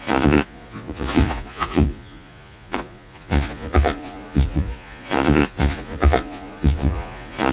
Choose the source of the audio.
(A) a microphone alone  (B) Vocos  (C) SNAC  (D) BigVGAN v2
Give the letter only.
B